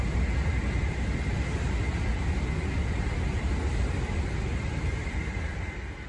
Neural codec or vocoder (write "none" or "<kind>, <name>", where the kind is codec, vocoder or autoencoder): none